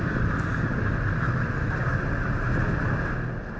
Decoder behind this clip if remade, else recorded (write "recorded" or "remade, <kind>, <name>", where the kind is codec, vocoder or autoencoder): recorded